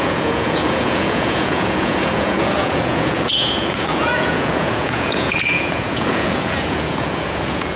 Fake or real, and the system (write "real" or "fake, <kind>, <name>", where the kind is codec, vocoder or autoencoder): fake, vocoder, Vocos